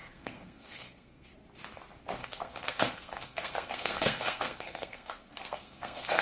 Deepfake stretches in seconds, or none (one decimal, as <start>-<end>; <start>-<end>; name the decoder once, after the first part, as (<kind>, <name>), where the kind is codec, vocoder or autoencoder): 0.0-1.3 (codec, SNAC); 2.2-6.2